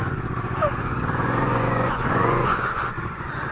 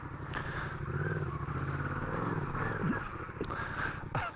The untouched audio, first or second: second